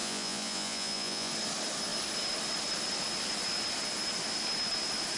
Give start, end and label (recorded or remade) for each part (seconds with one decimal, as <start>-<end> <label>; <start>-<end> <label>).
0.0-1.3 remade; 1.3-5.2 recorded